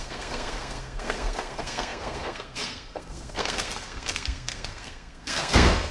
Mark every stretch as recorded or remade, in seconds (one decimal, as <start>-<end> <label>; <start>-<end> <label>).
0.0-5.9 remade